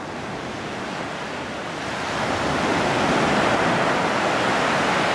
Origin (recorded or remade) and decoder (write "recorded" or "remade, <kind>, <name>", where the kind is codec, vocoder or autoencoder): recorded